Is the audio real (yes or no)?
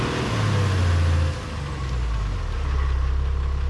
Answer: yes